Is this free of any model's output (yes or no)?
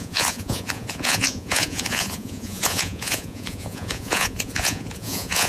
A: no